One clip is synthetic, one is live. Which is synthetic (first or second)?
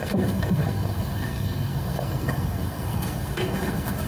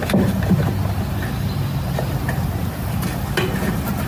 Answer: first